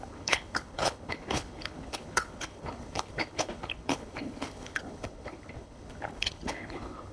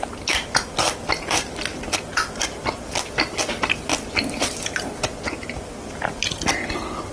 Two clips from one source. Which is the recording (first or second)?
second